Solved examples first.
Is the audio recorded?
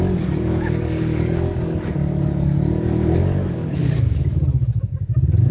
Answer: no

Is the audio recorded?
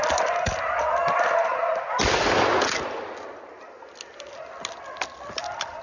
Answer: yes